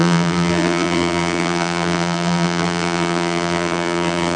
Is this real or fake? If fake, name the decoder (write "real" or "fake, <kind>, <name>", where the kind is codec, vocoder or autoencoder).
fake, vocoder, BigVGAN v2